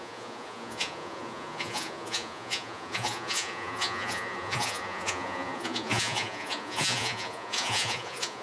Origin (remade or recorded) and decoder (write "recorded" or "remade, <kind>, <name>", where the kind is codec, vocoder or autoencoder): remade, vocoder, Vocos